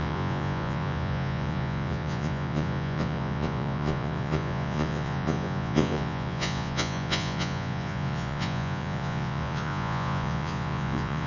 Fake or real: fake